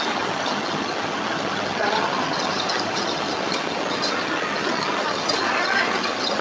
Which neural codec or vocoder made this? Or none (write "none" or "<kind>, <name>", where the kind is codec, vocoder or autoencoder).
vocoder, HiFi-GAN